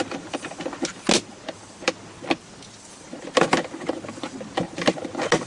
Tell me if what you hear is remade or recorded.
recorded